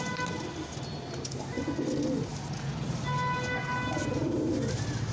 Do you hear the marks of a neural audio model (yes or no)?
no